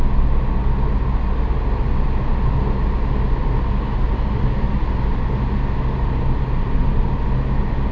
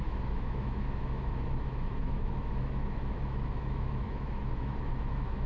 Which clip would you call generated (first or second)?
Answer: second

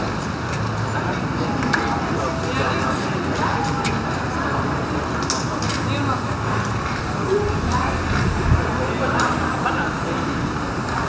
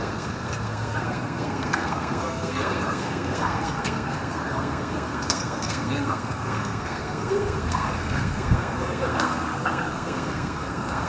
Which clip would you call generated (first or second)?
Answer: second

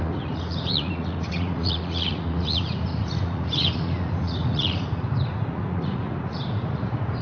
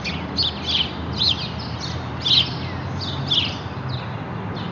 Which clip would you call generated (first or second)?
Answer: first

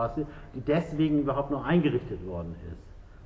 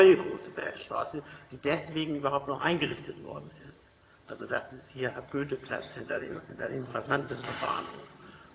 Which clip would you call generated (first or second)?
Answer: second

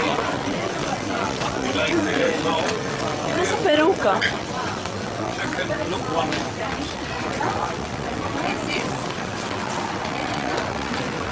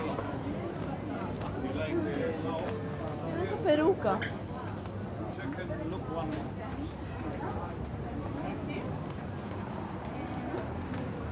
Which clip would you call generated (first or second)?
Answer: first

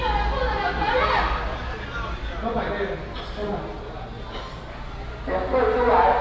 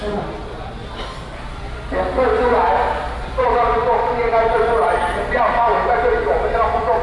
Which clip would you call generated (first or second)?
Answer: second